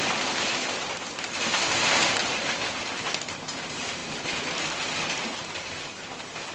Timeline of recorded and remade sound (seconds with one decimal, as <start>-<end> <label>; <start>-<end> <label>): 0.0-6.5 recorded